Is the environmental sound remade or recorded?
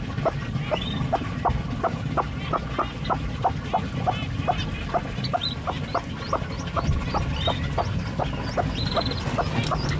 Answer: recorded